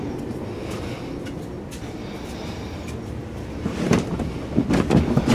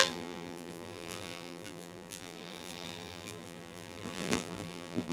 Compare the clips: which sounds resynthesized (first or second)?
second